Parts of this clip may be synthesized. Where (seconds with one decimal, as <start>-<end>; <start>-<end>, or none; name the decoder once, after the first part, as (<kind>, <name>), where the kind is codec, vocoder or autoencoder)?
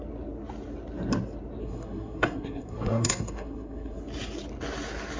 1.6-4.0 (codec, SNAC)